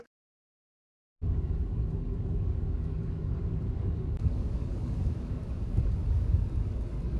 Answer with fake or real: fake